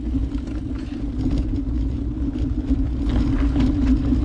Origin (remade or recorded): recorded